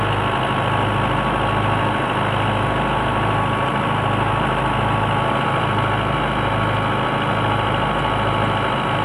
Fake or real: real